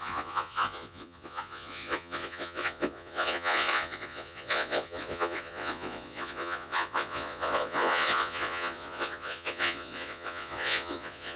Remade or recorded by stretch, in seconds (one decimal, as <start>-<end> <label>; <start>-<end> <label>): 0.0-11.4 remade